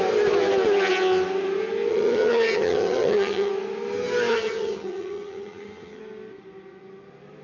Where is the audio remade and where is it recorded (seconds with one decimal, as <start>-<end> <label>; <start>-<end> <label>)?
0.0-1.9 recorded; 1.9-3.5 remade; 3.5-4.3 recorded; 4.3-6.0 remade; 6.0-7.4 recorded